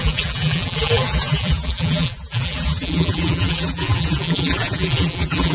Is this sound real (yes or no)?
no